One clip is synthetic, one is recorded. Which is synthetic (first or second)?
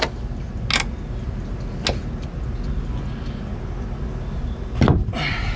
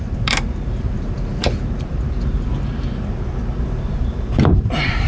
second